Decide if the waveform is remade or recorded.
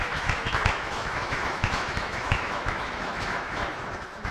remade